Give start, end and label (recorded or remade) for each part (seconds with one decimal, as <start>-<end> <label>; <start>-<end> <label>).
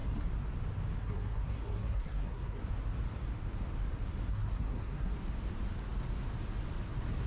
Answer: 0.0-1.0 recorded; 1.0-2.6 remade; 2.6-4.3 recorded; 4.3-5.1 remade; 5.1-7.3 recorded